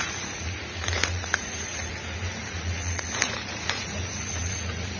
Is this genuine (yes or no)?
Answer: no